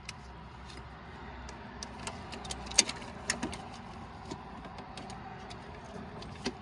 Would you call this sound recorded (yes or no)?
yes